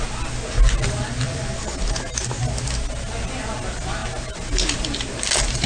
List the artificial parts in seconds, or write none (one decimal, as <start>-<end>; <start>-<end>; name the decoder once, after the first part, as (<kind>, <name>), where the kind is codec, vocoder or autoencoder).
none

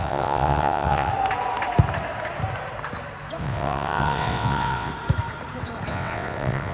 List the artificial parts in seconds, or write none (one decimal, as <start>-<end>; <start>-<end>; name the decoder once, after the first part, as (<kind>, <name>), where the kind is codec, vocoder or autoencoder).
0.0-1.1 (vocoder, WaveNeXt); 3.4-4.9; 5.9-6.7

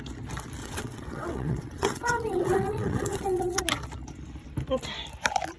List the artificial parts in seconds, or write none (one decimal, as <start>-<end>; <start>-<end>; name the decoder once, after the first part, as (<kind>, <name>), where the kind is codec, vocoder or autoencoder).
0.6-3.6 (vocoder, WaveNeXt)

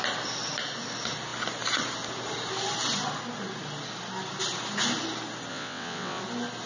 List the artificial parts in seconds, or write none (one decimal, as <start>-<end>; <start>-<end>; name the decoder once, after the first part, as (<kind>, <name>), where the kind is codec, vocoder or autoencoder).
5.5-6.2 (vocoder, WaveNeXt)

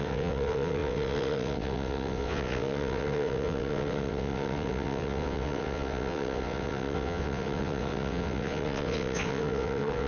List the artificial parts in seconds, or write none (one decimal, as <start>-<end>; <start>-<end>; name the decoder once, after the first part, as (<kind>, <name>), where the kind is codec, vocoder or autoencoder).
0.0-10.1 (vocoder, WaveNeXt)